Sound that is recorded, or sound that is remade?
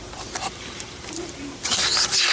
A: remade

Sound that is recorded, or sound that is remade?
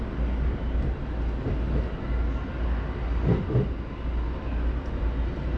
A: recorded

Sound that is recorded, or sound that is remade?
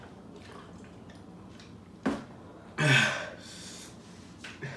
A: recorded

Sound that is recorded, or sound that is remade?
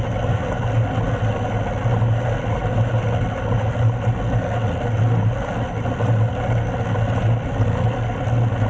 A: recorded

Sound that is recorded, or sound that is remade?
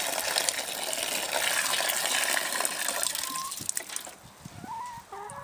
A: recorded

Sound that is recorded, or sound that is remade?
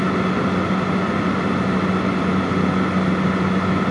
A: recorded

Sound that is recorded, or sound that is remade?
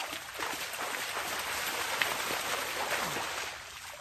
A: recorded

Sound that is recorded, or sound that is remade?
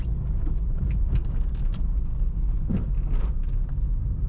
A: recorded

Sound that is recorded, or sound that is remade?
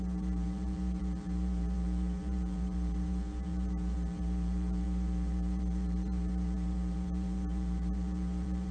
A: remade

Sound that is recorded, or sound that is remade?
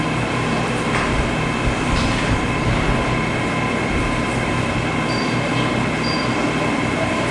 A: recorded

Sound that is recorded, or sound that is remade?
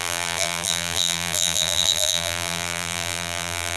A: remade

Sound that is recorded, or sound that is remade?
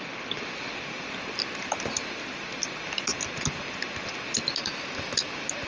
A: recorded